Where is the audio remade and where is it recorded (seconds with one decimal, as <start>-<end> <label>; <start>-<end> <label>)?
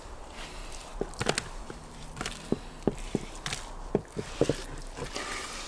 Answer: 0.0-0.9 remade; 0.9-1.6 recorded; 1.6-5.7 remade